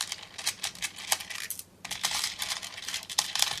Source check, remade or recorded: recorded